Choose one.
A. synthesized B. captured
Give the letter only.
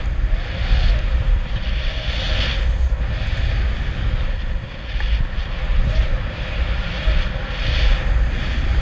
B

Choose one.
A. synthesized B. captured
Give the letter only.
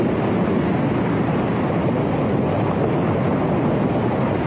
B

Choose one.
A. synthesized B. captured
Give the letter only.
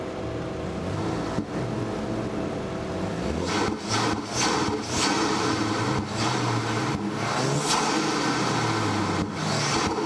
B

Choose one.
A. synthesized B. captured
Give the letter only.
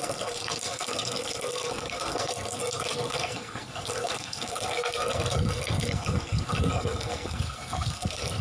A